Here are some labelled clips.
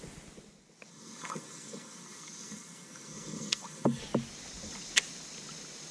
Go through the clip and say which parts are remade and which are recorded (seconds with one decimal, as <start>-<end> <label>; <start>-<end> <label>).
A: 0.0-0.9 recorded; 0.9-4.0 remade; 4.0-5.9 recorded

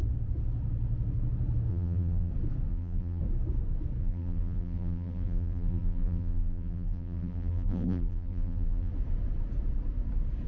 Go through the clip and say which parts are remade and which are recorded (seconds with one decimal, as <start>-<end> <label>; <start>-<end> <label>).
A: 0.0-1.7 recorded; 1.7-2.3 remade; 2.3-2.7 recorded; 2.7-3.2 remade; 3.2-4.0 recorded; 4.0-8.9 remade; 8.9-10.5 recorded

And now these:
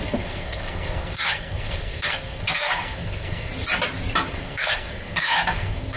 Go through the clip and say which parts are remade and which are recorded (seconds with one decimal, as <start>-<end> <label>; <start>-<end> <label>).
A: 0.0-3.5 remade; 3.5-4.3 recorded; 4.3-6.0 remade

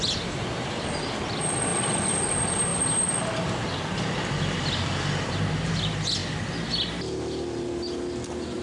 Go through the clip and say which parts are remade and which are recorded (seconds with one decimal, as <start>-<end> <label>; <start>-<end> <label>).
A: 0.0-8.6 recorded

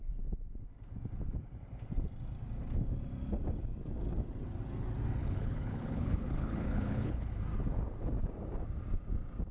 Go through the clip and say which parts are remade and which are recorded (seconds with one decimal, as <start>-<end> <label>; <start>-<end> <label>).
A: 0.0-5.2 recorded; 5.2-7.3 remade; 7.3-9.5 recorded

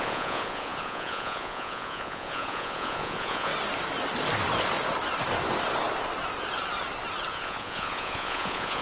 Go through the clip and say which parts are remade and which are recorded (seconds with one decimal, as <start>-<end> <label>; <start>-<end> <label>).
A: 0.0-3.5 remade; 3.5-7.3 recorded; 7.3-8.8 remade